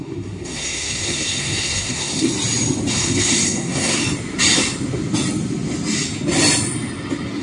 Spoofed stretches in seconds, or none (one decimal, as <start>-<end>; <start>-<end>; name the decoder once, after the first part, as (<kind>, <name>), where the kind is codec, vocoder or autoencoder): 0.0-2.3 (codec, SNAC); 2.9-4.0